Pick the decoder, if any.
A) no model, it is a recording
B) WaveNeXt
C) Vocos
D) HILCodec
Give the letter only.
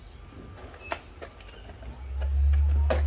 A